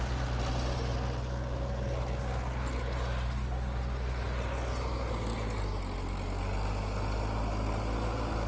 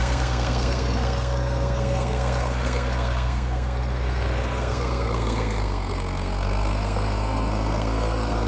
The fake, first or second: second